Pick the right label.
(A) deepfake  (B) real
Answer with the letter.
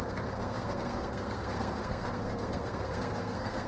A